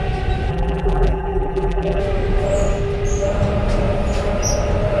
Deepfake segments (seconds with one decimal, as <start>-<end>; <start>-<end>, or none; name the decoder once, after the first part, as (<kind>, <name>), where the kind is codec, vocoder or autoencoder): 0.5-2.0 (vocoder, BigVGAN v2)